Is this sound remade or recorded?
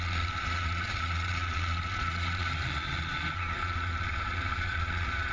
remade